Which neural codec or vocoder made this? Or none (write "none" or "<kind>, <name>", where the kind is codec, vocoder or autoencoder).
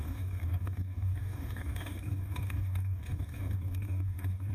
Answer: codec, DAC